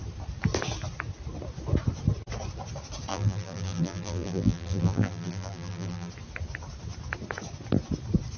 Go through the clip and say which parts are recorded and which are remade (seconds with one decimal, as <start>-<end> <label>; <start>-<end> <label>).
0.0-3.1 recorded; 3.1-6.1 remade; 6.1-8.4 recorded